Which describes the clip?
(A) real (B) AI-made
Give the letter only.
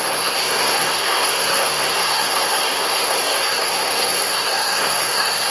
B